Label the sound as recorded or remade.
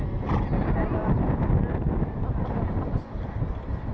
recorded